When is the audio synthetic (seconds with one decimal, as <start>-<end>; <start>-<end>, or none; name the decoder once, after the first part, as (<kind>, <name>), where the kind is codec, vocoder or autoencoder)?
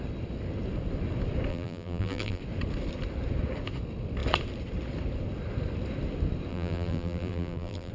1.5-2.4 (vocoder, BigVGAN v2); 6.5-7.9